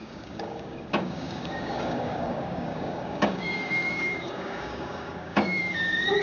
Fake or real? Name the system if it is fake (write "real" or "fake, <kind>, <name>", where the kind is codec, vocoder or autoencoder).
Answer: fake, codec, DAC